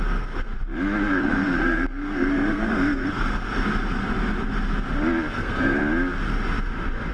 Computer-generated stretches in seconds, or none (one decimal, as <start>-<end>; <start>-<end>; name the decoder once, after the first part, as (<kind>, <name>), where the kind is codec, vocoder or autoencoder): 0.0-0.5 (codec, SNAC); 1.2-3.4; 5.3-5.8